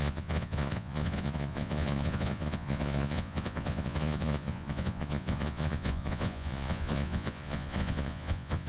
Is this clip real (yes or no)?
no